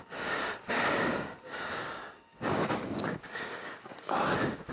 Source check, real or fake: fake